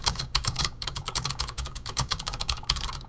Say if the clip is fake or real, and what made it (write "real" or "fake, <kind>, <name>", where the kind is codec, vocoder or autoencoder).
fake, codec, DAC